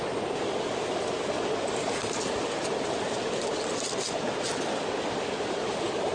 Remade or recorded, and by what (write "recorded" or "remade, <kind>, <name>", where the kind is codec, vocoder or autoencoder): recorded